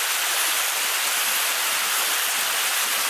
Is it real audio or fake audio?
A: real